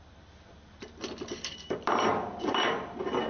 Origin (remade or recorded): remade